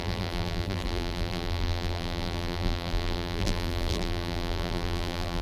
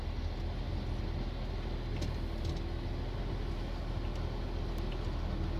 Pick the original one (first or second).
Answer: second